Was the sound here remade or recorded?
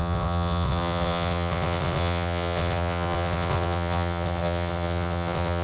remade